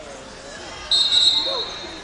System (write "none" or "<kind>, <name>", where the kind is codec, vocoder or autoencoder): none